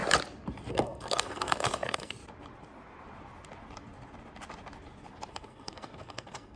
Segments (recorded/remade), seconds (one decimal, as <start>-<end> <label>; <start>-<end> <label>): 0.0-0.7 recorded; 0.7-2.2 remade; 2.2-5.3 recorded; 5.3-6.6 remade